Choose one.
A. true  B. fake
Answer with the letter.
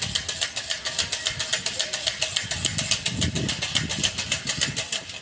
A